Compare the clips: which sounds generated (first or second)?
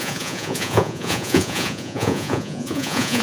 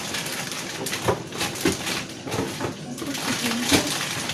first